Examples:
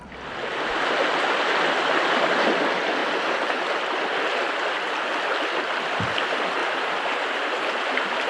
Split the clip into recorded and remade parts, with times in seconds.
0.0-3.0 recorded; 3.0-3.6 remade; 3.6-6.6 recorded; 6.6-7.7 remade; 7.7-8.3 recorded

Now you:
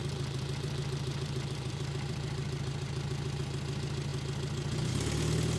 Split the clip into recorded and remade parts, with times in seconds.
0.0-3.4 remade; 3.4-5.6 recorded

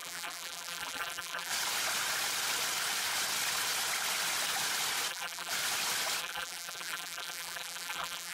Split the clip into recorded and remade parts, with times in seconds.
0.0-1.5 remade; 1.5-5.1 recorded; 5.1-5.5 remade; 5.5-6.2 recorded; 6.2-8.3 remade

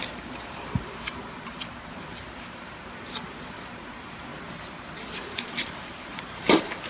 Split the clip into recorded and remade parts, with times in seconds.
0.0-4.3 remade; 4.3-5.3 recorded; 5.3-6.9 remade

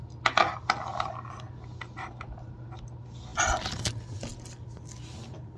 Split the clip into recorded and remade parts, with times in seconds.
0.0-0.9 recorded; 0.9-1.5 remade; 1.5-5.6 recorded

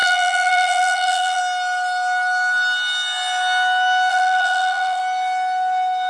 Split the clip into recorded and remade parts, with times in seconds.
0.0-1.4 remade; 1.4-4.1 recorded; 4.1-5.0 remade; 5.0-6.1 recorded

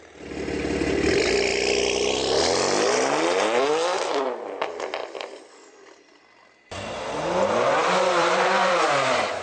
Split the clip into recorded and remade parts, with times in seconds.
0.0-8.2 recorded; 8.2-8.7 remade; 8.7-9.4 recorded

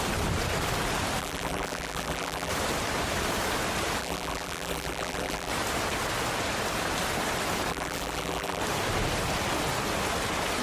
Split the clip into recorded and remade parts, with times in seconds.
0.0-1.2 recorded; 1.2-2.5 remade; 2.5-4.0 recorded; 4.0-5.5 remade; 5.5-7.7 recorded; 7.7-8.6 remade; 8.6-10.6 recorded